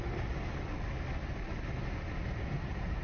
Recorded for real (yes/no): yes